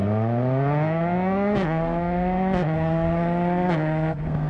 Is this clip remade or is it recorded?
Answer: remade